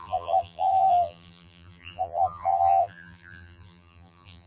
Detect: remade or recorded remade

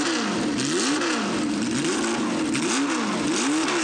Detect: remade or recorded recorded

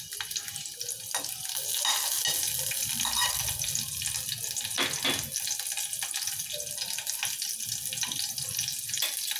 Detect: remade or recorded recorded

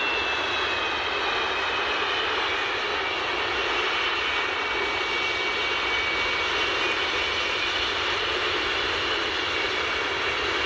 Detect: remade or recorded recorded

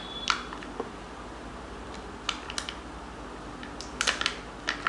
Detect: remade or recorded recorded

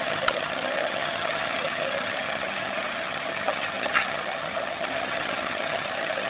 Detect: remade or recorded remade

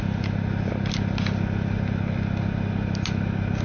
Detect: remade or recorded recorded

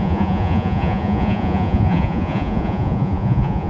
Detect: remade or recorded remade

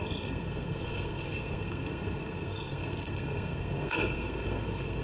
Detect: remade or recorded remade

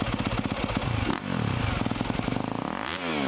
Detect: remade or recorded recorded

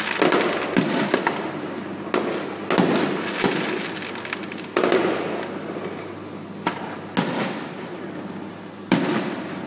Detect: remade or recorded recorded